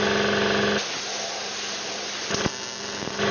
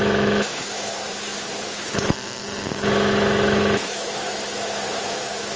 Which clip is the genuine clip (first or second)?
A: first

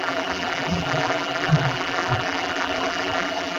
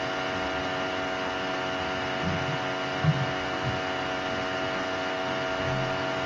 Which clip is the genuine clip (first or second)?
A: second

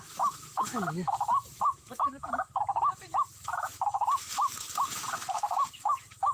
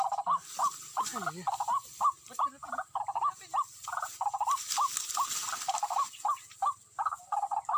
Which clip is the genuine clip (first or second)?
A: second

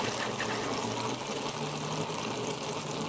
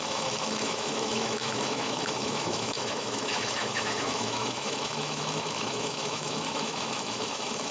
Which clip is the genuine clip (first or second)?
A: first